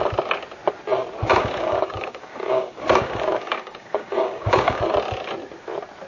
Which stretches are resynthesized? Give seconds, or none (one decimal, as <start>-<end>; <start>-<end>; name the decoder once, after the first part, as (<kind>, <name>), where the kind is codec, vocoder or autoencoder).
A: 1.3-4.8 (codec, DAC)